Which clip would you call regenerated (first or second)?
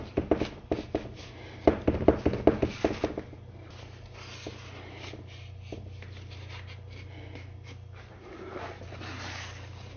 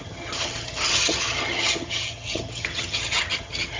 second